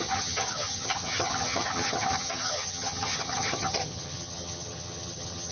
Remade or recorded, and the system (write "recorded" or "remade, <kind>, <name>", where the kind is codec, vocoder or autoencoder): remade, vocoder, HiFi-GAN